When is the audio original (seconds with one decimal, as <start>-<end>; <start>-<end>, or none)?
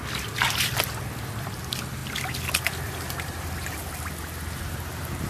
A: 0.0-1.4; 2.0-4.6